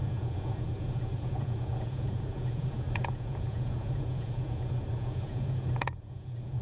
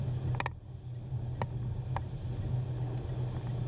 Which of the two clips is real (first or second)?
second